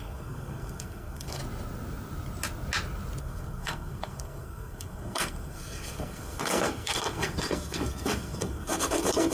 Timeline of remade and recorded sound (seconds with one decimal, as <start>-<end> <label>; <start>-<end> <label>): 0.0-1.4 remade; 1.4-3.2 recorded; 3.2-9.3 remade